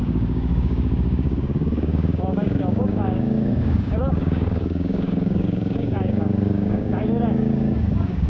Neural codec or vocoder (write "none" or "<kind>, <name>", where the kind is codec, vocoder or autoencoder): codec, DAC